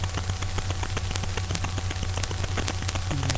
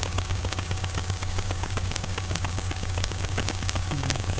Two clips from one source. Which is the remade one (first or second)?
second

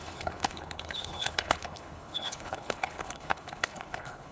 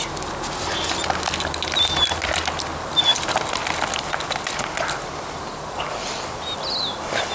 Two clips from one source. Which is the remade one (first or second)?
first